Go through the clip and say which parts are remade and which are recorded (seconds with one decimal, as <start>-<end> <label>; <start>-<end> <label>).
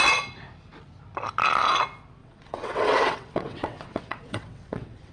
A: 0.0-2.2 recorded; 2.2-5.1 remade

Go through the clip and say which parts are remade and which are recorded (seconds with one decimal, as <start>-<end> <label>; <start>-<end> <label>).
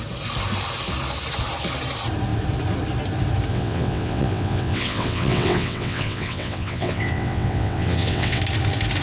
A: 0.0-3.5 recorded; 3.5-8.4 remade; 8.4-9.0 recorded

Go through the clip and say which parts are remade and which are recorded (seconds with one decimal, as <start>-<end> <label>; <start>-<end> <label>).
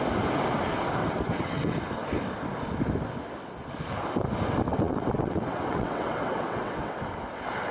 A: 0.0-1.0 recorded; 1.0-1.8 remade; 1.8-4.7 recorded; 4.7-6.9 remade; 6.9-7.7 recorded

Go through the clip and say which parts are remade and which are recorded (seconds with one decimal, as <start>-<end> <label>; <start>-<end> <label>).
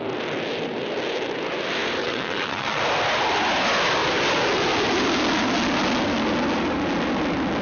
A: 0.0-2.0 recorded; 2.0-2.8 remade; 2.8-7.6 recorded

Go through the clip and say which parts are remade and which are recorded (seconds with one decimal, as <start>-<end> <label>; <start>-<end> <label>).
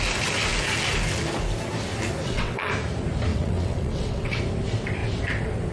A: 0.0-2.2 recorded; 2.2-2.7 remade; 2.7-3.3 recorded; 3.3-4.4 remade; 4.4-5.7 recorded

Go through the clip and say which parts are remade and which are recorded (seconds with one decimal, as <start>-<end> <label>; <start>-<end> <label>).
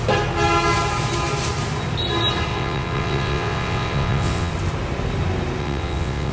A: 0.0-2.5 recorded; 2.5-4.5 remade; 4.5-5.6 recorded; 5.6-6.3 remade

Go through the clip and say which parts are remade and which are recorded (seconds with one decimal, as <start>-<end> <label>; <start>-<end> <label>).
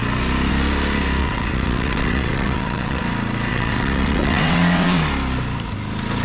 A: 0.0-1.2 recorded; 1.2-3.0 remade; 3.0-3.5 recorded; 3.5-5.0 remade; 5.0-6.2 recorded